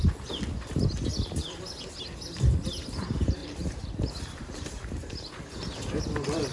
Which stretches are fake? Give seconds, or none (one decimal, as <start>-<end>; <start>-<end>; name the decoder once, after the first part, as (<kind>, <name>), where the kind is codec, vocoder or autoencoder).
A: 3.4-6.0 (vocoder, BigVGAN v2)